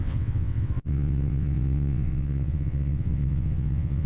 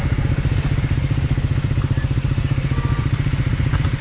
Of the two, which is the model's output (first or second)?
first